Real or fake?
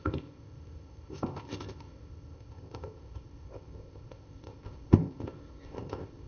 fake